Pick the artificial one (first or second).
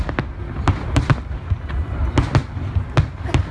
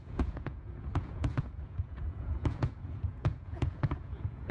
second